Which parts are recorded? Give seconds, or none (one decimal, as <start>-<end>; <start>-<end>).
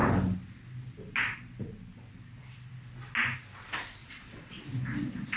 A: 0.0-4.0; 4.6-5.4